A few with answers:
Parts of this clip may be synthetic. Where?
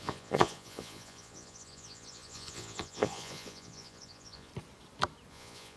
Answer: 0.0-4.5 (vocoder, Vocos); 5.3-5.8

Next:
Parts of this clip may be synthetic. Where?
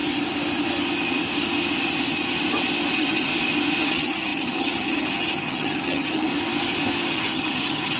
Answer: 2.9-3.3 (vocoder, HiFi-GAN); 3.8-6.3; 7.1-8.0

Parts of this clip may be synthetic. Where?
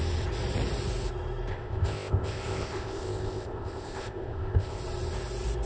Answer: 1.5-4.8 (codec, ZipCodec)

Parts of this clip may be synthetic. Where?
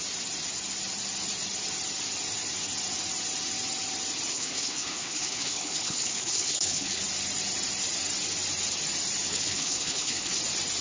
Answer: 4.3-7.0 (codec, HILCodec); 9.3-10.4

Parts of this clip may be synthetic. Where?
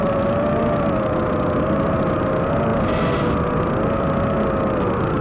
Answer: none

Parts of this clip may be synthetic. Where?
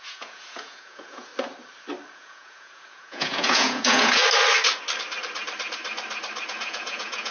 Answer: 0.0-1.3 (vocoder, Vocos); 2.1-4.2; 6.5-7.3